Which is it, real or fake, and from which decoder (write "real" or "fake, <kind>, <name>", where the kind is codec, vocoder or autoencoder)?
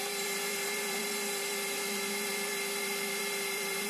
fake, vocoder, BigVGAN v2